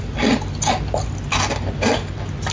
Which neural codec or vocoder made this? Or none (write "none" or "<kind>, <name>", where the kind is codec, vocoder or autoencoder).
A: none